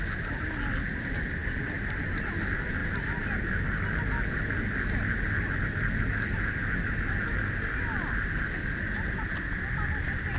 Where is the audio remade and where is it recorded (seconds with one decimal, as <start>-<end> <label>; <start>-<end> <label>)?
0.0-10.4 recorded